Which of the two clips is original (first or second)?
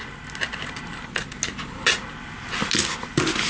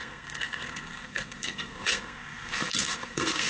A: first